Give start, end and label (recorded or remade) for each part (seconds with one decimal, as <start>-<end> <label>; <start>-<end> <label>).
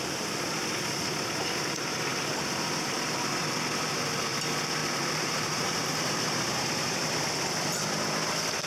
0.0-4.8 recorded; 4.8-7.1 remade; 7.1-8.7 recorded